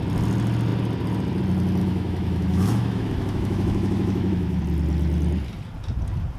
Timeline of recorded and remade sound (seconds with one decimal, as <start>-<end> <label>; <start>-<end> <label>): 0.0-1.8 recorded; 1.8-4.6 remade; 4.6-6.4 recorded